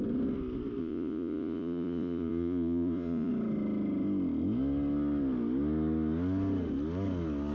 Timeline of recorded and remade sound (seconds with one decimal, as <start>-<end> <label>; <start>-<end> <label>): 0.0-0.8 recorded; 0.8-3.3 remade; 3.3-7.5 recorded